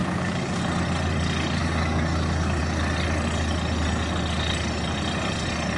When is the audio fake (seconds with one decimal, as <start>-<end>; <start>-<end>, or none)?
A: 0.0-0.6; 1.6-2.6